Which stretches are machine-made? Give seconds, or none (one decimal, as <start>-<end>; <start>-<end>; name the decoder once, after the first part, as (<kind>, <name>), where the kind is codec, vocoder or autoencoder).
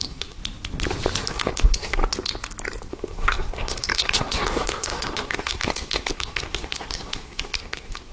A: 0.0-0.4 (codec, SNAC); 1.3-2.0; 2.9-8.1